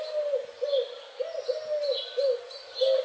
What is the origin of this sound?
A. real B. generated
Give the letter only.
A